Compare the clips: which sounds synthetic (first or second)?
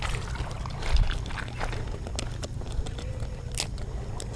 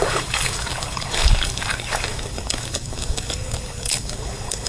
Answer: second